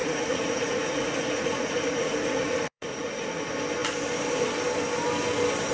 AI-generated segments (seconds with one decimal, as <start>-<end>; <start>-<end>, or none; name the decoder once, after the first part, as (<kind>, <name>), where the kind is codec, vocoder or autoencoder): 0.0-3.4 (vocoder, Vocos)